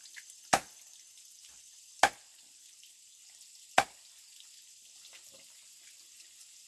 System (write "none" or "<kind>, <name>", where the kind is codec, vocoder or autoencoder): none